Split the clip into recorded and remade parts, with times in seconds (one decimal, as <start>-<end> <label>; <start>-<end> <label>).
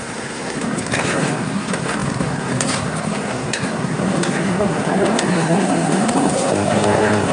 0.0-7.3 remade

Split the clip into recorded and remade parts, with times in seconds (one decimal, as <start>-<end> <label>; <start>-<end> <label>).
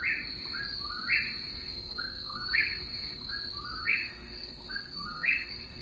0.0-1.5 recorded; 1.5-3.3 remade; 3.3-3.8 recorded; 3.8-5.8 remade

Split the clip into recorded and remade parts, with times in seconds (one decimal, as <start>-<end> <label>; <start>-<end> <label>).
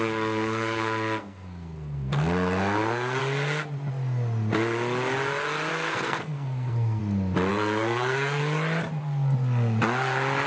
0.0-3.2 remade; 3.2-5.7 recorded; 5.7-7.0 remade; 7.0-7.5 recorded; 7.5-8.4 remade; 8.4-10.5 recorded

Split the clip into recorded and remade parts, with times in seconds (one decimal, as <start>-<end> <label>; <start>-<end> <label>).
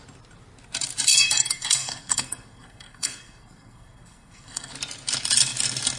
0.0-1.1 recorded; 1.1-4.7 remade; 4.7-6.0 recorded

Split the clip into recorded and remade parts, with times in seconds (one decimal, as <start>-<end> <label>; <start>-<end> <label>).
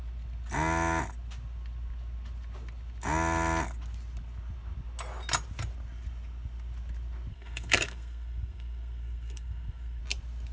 0.0-7.3 recorded; 7.3-10.0 remade; 10.0-10.5 recorded